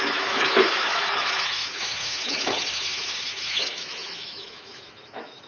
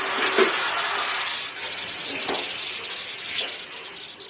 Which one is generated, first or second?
first